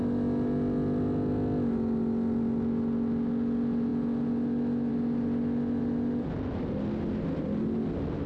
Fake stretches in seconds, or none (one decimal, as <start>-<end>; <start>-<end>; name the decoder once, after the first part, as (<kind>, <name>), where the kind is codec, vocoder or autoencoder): none